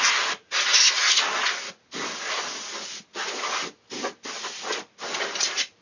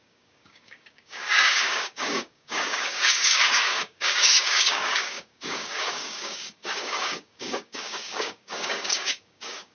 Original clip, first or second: first